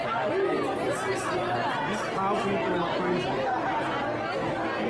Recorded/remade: recorded